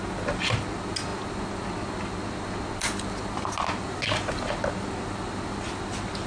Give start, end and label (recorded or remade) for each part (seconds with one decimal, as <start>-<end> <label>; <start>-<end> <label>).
0.0-6.3 recorded